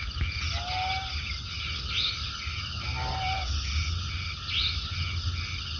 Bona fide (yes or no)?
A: yes